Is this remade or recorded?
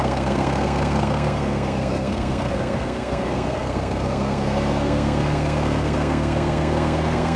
remade